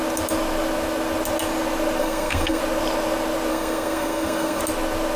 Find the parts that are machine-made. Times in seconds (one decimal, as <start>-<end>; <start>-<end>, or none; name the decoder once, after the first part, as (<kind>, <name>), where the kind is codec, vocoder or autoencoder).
2.0-2.6 (codec, SNAC); 3.5-4.6